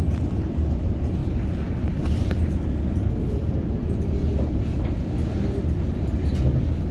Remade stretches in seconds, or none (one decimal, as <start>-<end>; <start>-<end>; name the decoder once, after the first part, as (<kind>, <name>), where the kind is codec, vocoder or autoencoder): 4.2-4.8 (vocoder, BigVGAN v2)